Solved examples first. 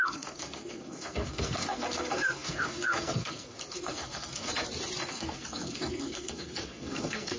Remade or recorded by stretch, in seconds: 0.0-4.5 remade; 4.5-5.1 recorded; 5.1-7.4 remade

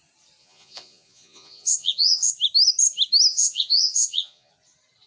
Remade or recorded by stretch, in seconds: 0.0-0.4 recorded; 0.4-2.3 remade; 2.3-3.3 recorded; 3.3-4.5 remade; 4.5-5.1 recorded

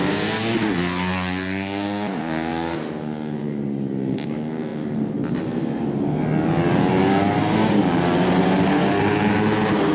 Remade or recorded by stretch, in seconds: 0.0-9.9 recorded

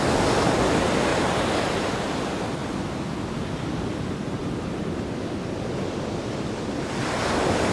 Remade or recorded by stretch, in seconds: 0.0-7.7 recorded

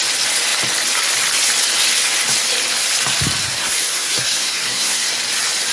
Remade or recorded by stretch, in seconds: 0.0-3.4 recorded; 3.4-5.1 remade; 5.1-5.7 recorded

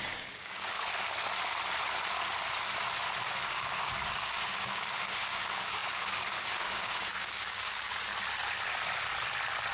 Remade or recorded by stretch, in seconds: 0.0-0.9 remade; 0.9-3.2 recorded; 3.2-8.1 remade; 8.1-9.7 recorded